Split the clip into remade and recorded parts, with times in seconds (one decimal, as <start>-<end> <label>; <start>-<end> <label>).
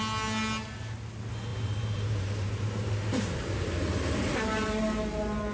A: 0.0-1.5 recorded; 1.5-4.8 remade; 4.8-5.5 recorded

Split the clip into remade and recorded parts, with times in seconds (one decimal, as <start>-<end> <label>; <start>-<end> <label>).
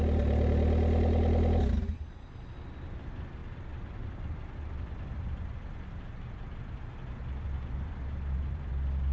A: 0.0-3.4 recorded; 3.4-8.7 remade; 8.7-9.1 recorded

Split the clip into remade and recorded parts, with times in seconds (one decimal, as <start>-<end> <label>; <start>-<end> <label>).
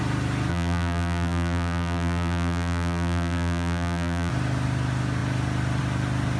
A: 0.0-0.5 recorded; 0.5-4.3 remade; 4.3-6.4 recorded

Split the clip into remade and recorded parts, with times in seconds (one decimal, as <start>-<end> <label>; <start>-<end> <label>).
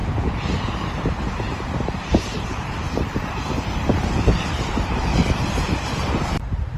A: 0.0-6.8 remade